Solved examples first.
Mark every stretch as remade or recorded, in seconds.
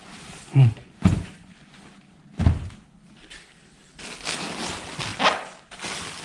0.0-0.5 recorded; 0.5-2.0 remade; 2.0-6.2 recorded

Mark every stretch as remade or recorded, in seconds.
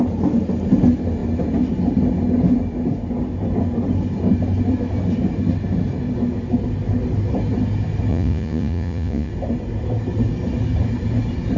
0.0-8.1 recorded; 8.1-9.3 remade; 9.3-11.6 recorded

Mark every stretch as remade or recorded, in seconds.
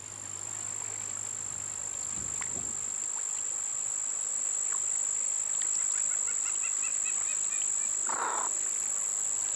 0.0-9.6 recorded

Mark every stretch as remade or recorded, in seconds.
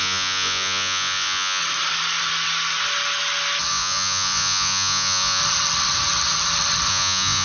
0.0-1.6 remade; 1.6-3.7 recorded; 3.7-5.4 remade; 5.4-6.9 recorded; 6.9-7.4 remade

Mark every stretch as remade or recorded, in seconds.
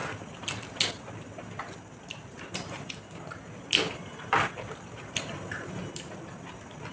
0.0-6.9 recorded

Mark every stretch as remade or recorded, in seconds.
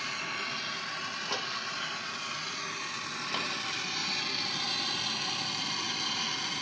0.0-6.6 recorded